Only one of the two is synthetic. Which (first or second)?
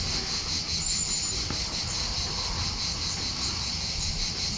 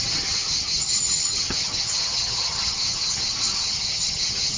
second